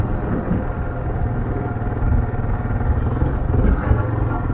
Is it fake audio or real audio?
real